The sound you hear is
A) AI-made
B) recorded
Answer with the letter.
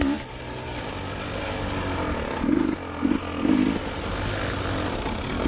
B